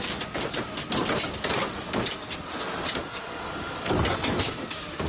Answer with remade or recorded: recorded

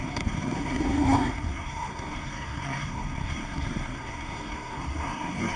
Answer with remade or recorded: remade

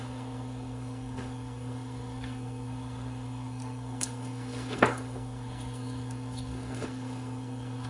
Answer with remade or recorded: remade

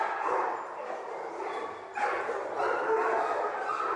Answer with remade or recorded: recorded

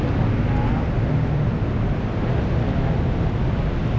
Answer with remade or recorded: recorded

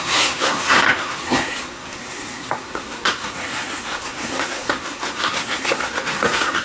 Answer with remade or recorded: remade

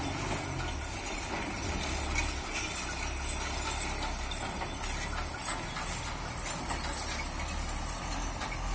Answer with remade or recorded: recorded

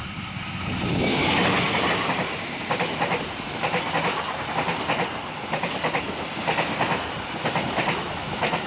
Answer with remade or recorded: recorded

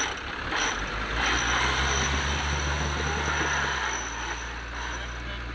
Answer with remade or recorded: recorded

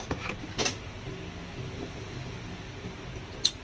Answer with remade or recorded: recorded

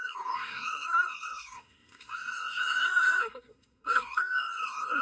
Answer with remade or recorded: remade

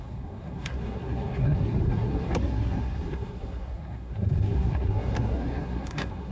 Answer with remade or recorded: remade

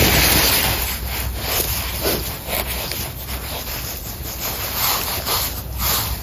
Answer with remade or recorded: recorded